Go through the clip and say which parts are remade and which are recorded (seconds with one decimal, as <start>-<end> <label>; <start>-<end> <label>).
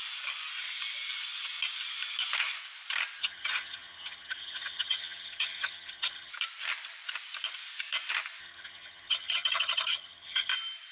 0.0-3.2 recorded; 3.2-6.3 remade; 6.3-8.4 recorded; 8.4-10.5 remade; 10.5-10.9 recorded